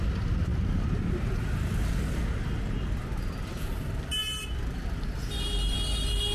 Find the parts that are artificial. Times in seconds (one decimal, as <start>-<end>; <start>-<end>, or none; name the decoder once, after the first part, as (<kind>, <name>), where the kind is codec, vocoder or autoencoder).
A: 0.5-1.9 (vocoder, BigVGAN v2)